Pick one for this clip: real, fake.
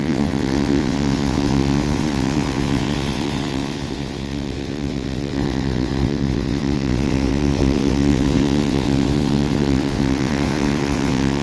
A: fake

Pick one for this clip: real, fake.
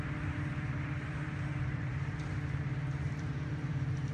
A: fake